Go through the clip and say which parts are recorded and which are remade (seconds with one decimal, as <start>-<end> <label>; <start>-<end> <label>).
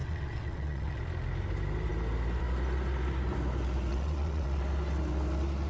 0.0-1.0 remade; 1.0-3.9 recorded; 3.9-4.6 remade; 4.6-5.7 recorded